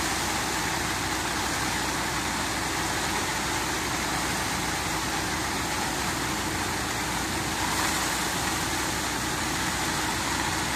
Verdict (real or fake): real